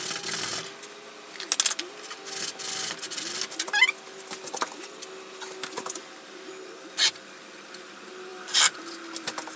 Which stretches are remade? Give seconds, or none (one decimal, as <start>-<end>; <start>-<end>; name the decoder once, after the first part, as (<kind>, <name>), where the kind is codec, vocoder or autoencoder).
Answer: 8.3-8.8 (vocoder, BigVGAN v2)